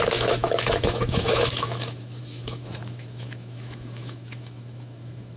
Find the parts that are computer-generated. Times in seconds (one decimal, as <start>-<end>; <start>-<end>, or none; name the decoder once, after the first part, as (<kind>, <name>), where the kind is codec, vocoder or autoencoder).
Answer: 0.0-5.4 (autoencoder, DAC-VAE)